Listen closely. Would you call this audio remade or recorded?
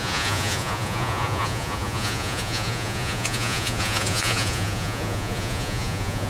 remade